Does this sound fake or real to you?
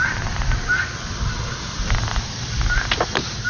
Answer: real